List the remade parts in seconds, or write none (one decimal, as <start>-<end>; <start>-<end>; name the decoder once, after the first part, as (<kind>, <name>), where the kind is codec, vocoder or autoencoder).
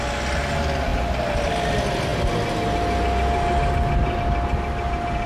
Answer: none